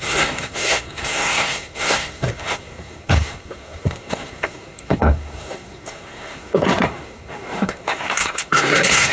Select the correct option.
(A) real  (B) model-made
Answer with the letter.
B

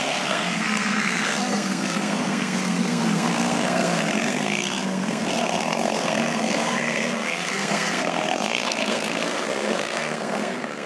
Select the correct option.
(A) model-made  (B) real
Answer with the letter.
A